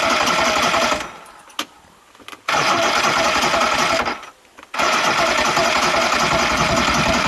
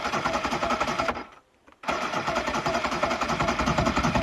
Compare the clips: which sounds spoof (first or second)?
second